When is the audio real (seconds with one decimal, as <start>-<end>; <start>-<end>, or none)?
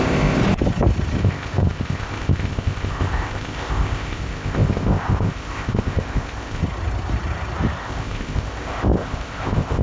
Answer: 0.4-1.2; 6.6-7.8